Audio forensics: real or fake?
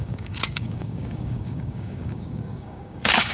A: fake